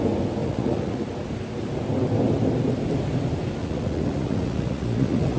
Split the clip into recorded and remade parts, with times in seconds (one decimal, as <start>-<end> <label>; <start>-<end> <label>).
0.0-0.4 recorded; 0.4-1.0 remade; 1.0-3.6 recorded; 3.6-5.4 remade